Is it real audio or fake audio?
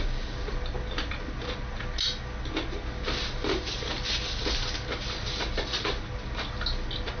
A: real